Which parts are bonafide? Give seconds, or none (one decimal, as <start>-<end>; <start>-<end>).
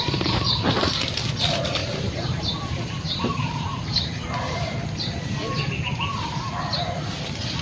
none